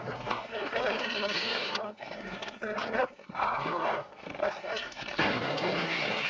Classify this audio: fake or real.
fake